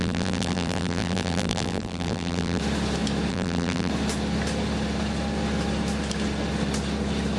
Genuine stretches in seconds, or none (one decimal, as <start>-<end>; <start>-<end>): 2.6-3.3; 3.9-7.4

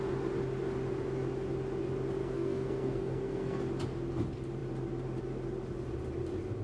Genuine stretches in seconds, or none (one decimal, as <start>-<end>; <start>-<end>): 0.0-2.2; 3.6-6.6

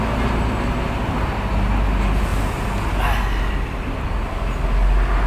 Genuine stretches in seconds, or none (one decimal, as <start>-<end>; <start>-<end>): 0.0-5.3

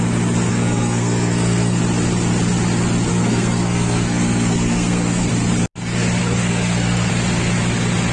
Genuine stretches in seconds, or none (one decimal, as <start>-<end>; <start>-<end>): 0.0-0.5; 1.8-3.1; 5.3-6.2; 7.1-8.1

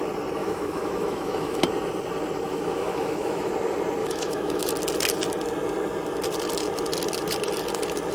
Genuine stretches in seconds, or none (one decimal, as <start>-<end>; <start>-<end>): 0.0-0.4; 1.6-2.5; 3.5-4.0; 4.7-8.1